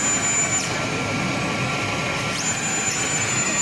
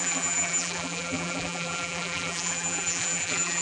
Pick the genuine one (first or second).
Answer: first